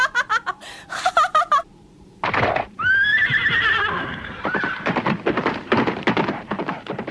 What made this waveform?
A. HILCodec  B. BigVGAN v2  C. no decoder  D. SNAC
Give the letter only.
B